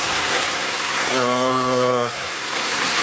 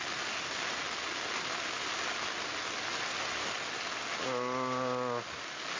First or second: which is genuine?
second